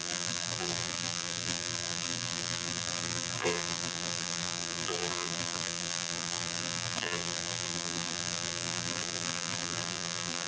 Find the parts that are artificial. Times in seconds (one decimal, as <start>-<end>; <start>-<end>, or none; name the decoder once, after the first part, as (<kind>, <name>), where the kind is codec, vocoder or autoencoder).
0.0-10.5 (vocoder, BigVGAN v2)